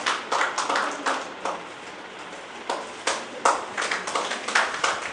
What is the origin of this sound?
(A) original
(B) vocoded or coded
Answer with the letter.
A